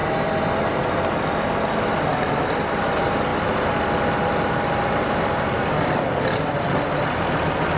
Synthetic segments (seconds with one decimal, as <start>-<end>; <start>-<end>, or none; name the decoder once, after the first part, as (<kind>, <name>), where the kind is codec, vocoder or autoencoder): none